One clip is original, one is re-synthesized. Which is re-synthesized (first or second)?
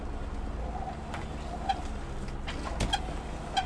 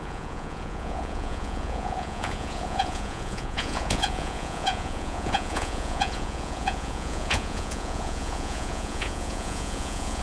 second